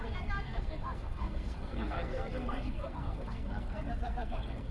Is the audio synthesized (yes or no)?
yes